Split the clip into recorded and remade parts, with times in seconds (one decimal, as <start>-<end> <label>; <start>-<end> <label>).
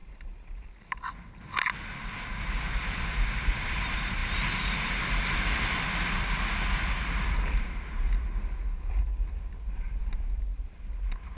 0.0-1.1 remade; 1.1-11.4 recorded